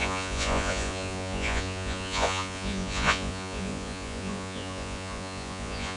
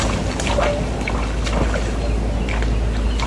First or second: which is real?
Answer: second